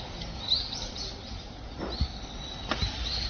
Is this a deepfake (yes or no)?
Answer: no